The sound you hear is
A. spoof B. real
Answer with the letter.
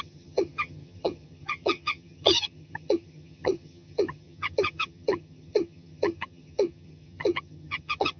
A